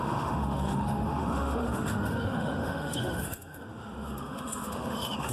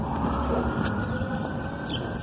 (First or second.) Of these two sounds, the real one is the second